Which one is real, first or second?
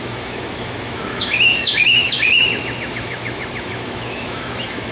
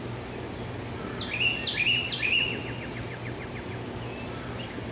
second